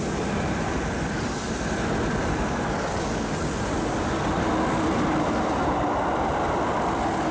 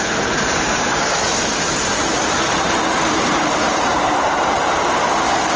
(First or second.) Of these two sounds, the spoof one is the second